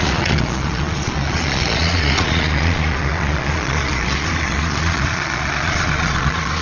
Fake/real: fake